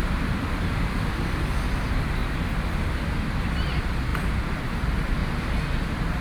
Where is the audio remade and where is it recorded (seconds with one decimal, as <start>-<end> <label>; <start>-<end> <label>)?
0.0-2.2 remade; 2.2-3.3 recorded; 3.3-5.2 remade; 5.2-6.2 recorded